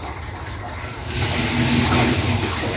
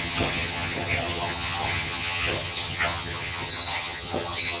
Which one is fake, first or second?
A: second